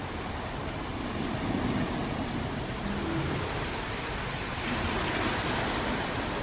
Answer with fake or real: real